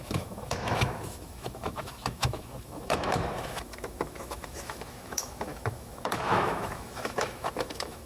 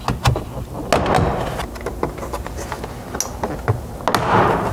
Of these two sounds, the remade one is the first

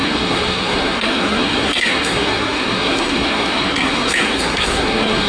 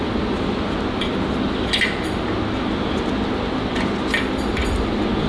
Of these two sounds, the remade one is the first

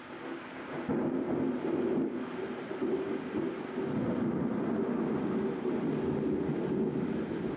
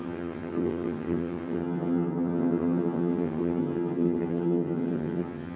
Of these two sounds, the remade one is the second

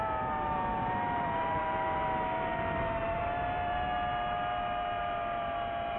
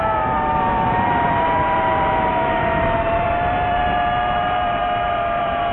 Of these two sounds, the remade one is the second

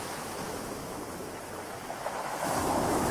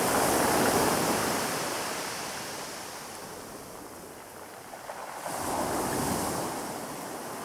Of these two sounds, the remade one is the first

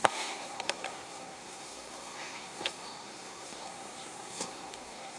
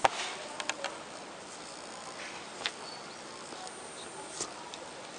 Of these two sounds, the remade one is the first